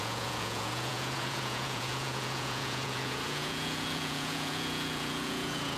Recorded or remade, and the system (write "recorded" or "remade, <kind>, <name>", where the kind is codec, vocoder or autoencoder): remade, vocoder, Vocos